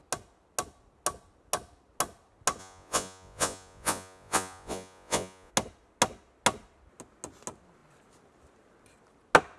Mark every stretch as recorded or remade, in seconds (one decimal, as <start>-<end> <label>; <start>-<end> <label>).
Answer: 0.0-2.6 recorded; 2.6-5.5 remade; 5.5-9.6 recorded